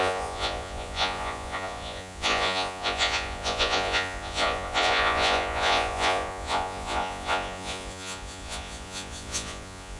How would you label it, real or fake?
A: fake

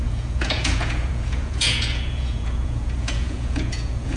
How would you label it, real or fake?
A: fake